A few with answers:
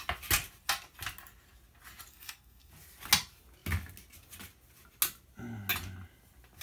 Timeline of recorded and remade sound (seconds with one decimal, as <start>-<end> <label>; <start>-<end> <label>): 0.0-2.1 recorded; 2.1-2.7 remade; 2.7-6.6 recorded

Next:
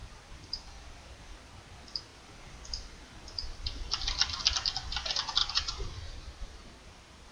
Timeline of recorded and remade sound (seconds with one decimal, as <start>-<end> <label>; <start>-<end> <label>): 0.0-1.2 remade; 1.2-5.4 recorded; 5.4-7.3 remade

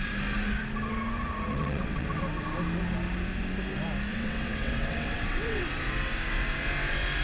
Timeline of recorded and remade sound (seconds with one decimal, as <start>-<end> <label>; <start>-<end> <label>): 0.0-1.5 recorded; 1.5-2.2 remade; 2.2-4.1 recorded; 4.1-5.8 remade; 5.8-7.2 recorded

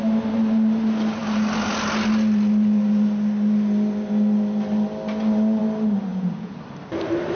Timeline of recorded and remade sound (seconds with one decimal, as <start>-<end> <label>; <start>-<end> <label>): 0.0-6.1 recorded; 6.1-6.6 remade; 6.6-7.3 recorded

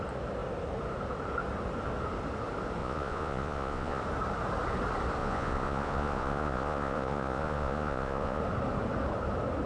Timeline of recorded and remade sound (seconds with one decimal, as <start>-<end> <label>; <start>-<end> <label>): 0.0-2.8 recorded; 2.8-4.0 remade; 4.0-5.2 recorded; 5.2-8.4 remade; 8.4-9.7 recorded

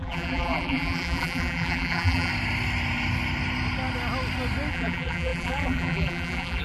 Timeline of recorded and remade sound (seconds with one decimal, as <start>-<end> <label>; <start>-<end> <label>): 0.0-2.3 remade; 2.3-4.7 recorded; 4.7-6.6 remade